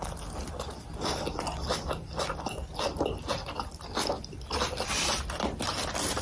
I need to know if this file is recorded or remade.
recorded